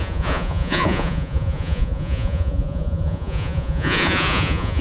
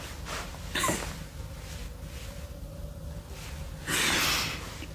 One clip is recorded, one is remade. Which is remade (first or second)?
first